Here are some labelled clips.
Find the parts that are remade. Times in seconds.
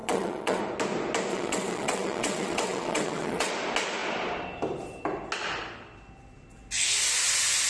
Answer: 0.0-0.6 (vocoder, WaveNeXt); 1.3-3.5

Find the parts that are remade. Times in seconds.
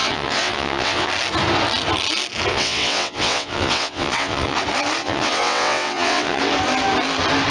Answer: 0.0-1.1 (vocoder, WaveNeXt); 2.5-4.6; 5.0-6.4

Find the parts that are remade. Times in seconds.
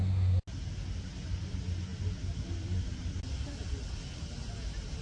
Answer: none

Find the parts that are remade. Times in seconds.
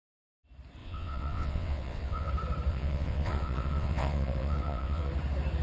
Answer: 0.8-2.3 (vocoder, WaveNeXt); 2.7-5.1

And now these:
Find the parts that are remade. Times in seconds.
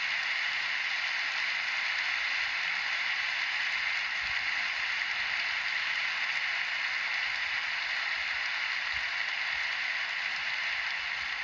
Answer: none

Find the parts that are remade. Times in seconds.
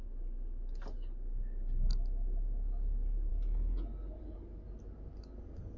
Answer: none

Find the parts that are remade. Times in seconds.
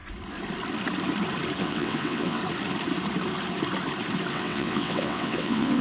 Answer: 1.6-2.4 (vocoder, WaveNeXt); 4.3-5.8